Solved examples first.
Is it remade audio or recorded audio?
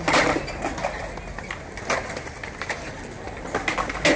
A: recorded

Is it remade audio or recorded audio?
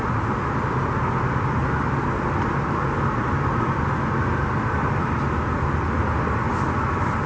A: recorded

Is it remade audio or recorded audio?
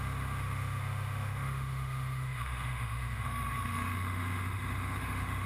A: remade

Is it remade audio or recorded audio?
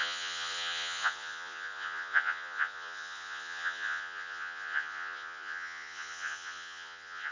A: remade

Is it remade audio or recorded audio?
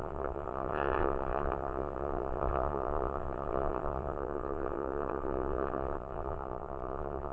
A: remade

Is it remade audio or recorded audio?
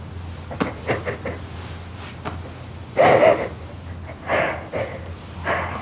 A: recorded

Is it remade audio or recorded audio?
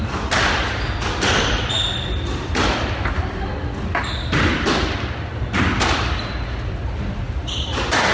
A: recorded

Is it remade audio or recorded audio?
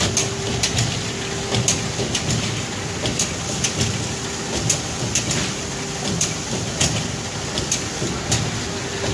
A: recorded